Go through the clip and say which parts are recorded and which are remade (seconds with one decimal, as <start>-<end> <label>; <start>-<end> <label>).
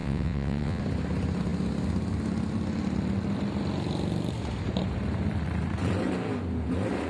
0.0-0.8 remade; 0.8-7.1 recorded